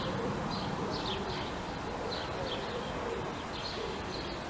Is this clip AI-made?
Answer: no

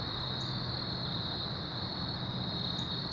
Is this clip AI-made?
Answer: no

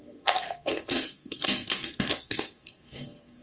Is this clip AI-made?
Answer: yes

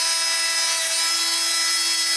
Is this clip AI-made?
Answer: no